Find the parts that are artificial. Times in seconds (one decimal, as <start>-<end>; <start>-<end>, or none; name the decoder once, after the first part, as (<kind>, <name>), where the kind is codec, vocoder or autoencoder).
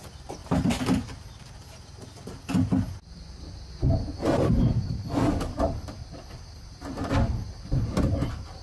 0.0-0.4 (vocoder, BigVGAN v2); 4.4-8.6